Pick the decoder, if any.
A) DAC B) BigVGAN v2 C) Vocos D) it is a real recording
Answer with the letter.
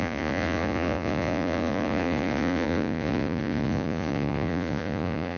C